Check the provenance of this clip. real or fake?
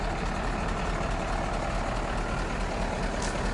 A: real